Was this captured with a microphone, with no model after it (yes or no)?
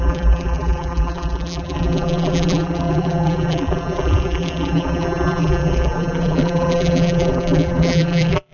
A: no